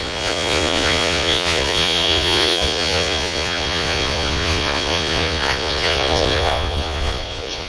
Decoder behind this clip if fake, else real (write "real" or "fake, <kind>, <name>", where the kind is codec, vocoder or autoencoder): fake, vocoder, Vocos